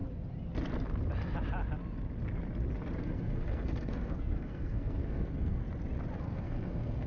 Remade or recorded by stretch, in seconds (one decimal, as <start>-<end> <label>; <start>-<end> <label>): 0.0-3.0 recorded; 3.0-5.6 remade; 5.6-6.2 recorded; 6.2-7.1 remade